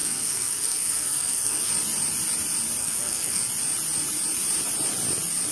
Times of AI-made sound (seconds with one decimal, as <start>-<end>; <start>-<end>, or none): 0.0-1.7; 2.8-3.4